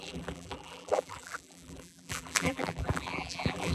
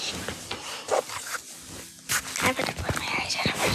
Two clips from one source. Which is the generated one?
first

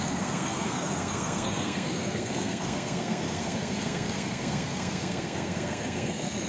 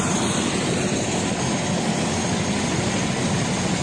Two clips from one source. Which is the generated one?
first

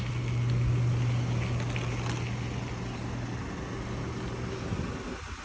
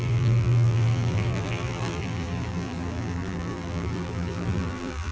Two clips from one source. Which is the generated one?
second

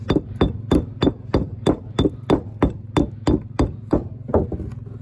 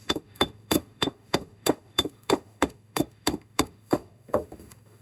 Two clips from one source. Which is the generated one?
second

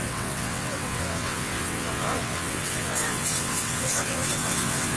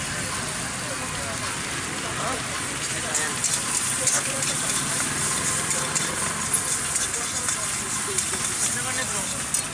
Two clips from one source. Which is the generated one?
first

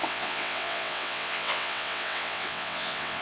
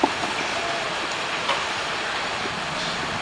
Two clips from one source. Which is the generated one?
first